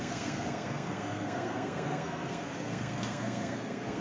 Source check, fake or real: fake